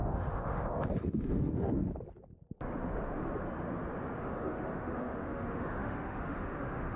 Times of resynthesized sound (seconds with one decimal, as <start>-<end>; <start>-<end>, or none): 0.0-1.9; 4.2-7.0